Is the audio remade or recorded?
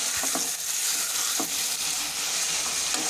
recorded